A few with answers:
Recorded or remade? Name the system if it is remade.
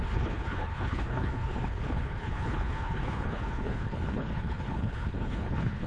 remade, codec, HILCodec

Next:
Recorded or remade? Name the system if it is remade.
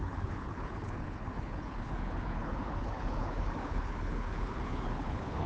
remade, codec, HILCodec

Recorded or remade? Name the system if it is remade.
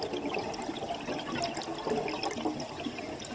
recorded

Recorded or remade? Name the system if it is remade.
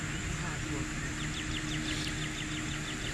recorded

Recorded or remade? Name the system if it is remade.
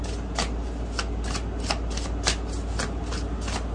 recorded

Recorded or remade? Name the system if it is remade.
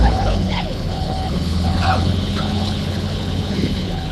remade, codec, HILCodec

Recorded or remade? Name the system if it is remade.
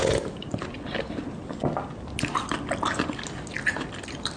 recorded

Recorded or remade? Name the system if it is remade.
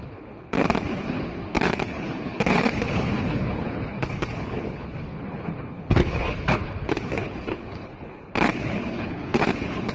remade, codec, HILCodec